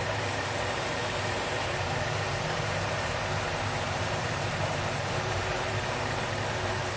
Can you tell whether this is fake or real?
fake